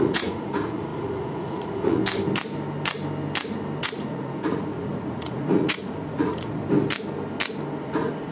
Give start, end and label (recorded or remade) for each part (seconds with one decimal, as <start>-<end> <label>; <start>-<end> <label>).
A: 0.0-2.0 remade; 2.0-3.8 recorded; 3.8-6.6 remade; 6.6-7.8 recorded; 7.8-8.3 remade

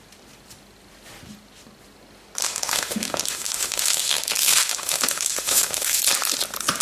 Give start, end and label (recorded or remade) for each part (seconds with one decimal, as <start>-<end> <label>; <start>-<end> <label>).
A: 0.0-2.4 recorded; 2.4-6.0 remade; 6.0-6.8 recorded